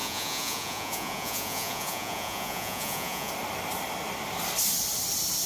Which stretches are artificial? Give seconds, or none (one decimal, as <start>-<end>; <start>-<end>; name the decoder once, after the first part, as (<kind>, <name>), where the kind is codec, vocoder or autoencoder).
0.0-3.3 (vocoder, Vocos)